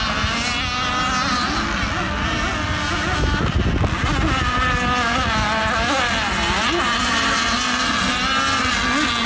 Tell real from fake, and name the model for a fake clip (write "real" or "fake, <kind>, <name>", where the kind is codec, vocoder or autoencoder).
real